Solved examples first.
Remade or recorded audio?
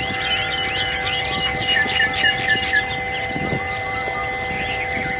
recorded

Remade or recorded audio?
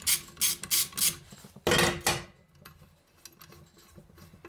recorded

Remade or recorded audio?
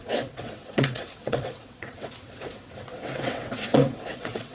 remade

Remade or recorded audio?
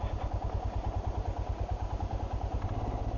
recorded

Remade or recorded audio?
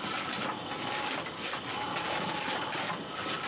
recorded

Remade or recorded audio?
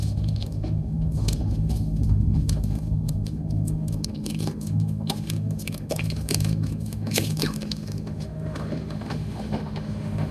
remade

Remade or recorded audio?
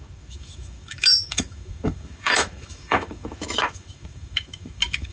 remade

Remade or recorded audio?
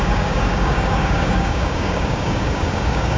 remade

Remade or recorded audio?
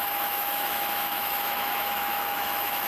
remade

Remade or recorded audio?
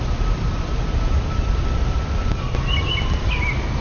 recorded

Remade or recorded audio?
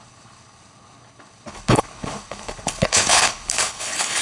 remade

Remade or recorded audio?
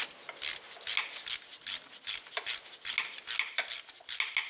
recorded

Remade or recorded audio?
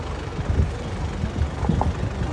recorded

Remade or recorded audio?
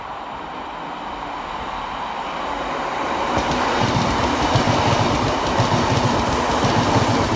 recorded